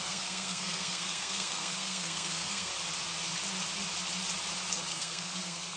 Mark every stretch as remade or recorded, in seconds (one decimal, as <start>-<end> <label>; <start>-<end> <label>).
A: 0.0-2.7 remade; 2.7-4.7 recorded; 4.7-5.8 remade